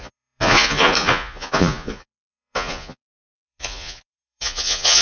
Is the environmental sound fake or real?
fake